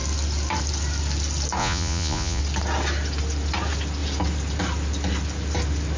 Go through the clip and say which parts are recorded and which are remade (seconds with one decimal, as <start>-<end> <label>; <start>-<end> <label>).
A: 0.0-1.6 recorded; 1.6-2.4 remade; 2.4-6.0 recorded